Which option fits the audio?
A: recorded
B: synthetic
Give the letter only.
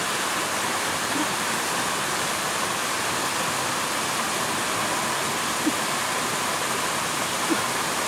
A